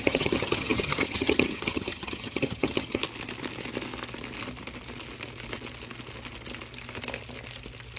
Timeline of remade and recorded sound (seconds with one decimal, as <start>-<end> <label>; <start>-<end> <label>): 0.0-3.0 remade; 3.0-8.0 recorded